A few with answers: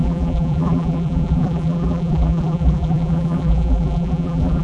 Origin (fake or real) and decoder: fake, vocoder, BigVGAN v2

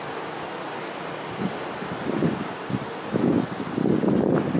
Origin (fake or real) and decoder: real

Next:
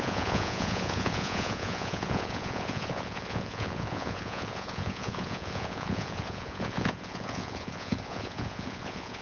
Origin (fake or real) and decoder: fake, vocoder, Vocos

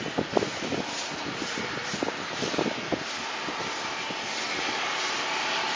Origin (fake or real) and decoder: real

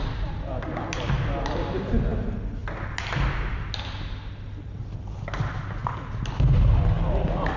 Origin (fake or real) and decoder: real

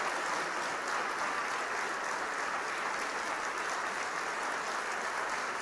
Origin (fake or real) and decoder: real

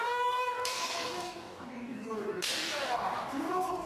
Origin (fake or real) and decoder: fake, codec, DAC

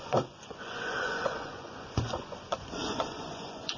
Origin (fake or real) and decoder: fake, vocoder, Vocos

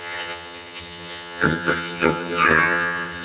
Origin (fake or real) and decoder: fake, vocoder, HiFi-GAN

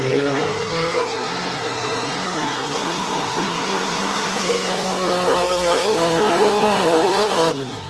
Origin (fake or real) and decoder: fake, codec, SNAC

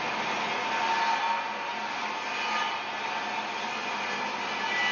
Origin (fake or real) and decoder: real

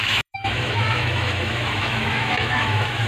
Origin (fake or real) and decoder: fake, autoencoder, DAC-VAE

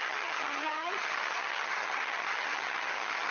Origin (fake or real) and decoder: fake, vocoder, HiFi-GAN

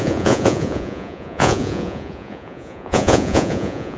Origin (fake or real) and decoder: fake, vocoder, Vocos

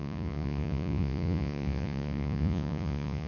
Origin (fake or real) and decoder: fake, vocoder, Vocos